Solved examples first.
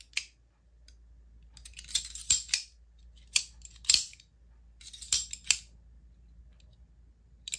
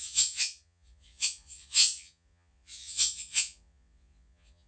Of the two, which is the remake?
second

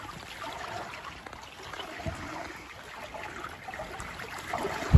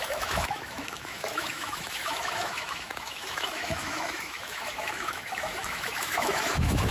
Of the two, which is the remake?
second